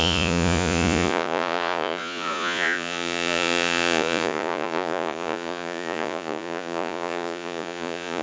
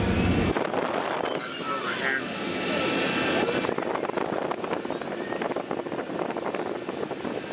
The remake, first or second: first